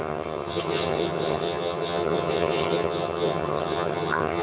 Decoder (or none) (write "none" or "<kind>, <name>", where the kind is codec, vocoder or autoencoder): vocoder, HiFi-GAN